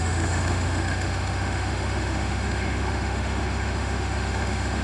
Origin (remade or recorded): remade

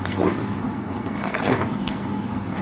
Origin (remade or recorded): remade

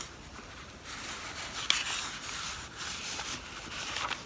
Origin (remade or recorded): recorded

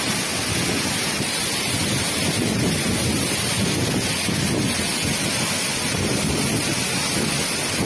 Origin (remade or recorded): recorded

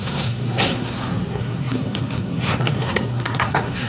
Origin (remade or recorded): remade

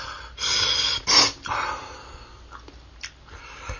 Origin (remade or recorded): recorded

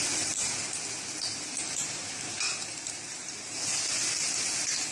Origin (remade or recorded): recorded